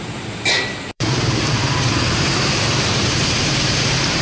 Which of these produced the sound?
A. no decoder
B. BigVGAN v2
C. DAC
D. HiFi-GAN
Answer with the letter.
B